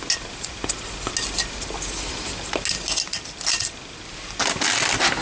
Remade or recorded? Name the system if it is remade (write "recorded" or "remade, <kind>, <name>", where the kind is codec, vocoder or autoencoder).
recorded